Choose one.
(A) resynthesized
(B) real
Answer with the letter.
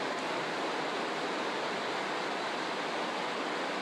B